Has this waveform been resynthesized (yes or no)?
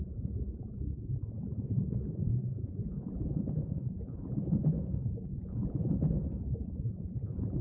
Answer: yes